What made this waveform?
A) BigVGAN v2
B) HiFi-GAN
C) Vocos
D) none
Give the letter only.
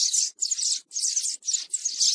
D